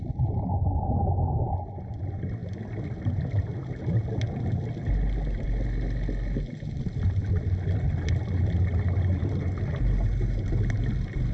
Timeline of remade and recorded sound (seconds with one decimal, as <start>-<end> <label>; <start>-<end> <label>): 0.0-11.3 recorded